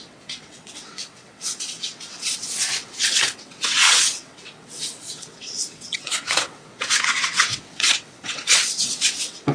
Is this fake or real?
fake